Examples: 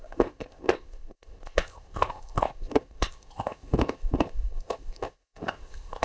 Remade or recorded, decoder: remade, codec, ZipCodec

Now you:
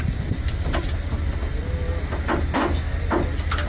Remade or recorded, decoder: recorded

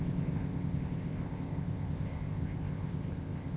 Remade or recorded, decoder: remade, codec, ZipCodec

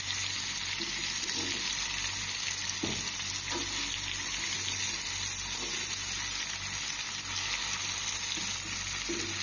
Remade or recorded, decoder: recorded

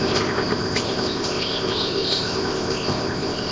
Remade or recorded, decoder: remade, codec, ZipCodec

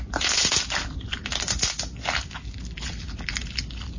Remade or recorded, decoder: recorded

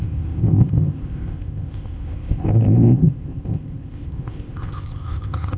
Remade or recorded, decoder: remade, codec, ZipCodec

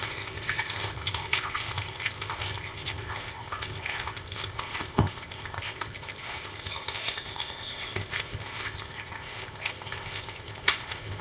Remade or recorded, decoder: remade, codec, ZipCodec